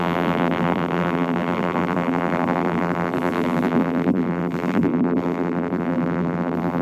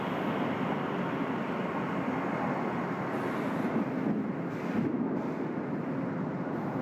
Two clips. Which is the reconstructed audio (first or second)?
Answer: first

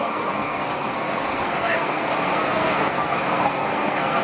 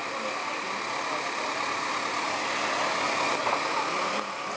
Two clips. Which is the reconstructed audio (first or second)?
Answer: first